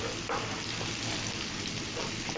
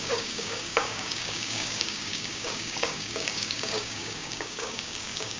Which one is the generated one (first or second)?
second